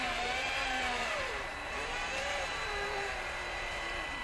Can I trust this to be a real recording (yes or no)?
no